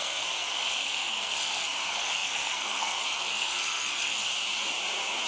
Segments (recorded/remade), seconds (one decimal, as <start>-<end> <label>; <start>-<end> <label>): 0.0-4.3 remade; 4.3-5.3 recorded